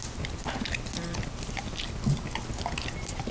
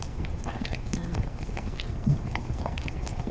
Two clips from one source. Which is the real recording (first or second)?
first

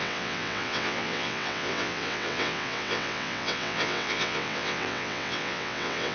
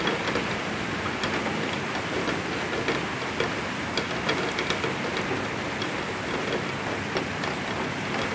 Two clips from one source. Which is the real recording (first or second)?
second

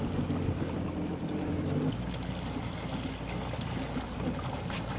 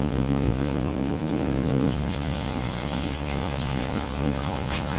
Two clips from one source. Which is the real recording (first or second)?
first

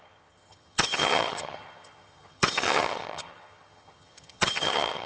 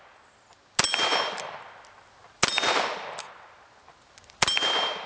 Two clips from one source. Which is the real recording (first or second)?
second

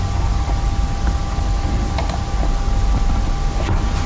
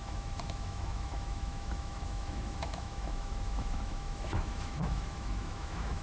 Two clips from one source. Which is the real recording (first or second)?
first